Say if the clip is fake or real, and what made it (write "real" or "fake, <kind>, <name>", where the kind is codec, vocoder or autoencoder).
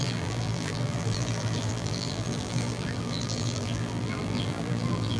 fake, vocoder, BigVGAN v2